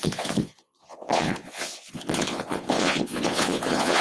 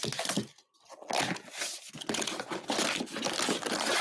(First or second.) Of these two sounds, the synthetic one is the first